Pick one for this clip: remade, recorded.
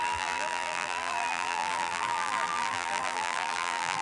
remade